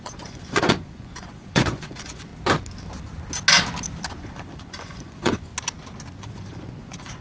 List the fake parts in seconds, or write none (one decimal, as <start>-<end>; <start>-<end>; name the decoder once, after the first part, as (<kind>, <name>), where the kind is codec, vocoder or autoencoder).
0.0-2.3 (vocoder, Vocos); 4.2-5.5; 6.2-7.2